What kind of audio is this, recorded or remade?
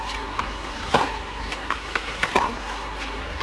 remade